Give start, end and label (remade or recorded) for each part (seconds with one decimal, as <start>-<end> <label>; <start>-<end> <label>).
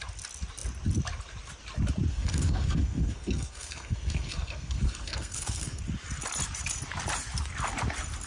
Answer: 0.0-2.1 recorded; 2.1-5.8 remade; 5.8-8.3 recorded